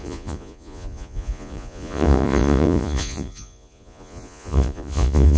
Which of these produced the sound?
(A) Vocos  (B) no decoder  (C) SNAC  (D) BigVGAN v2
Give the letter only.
A